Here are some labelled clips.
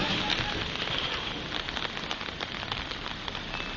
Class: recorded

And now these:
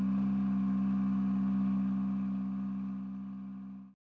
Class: recorded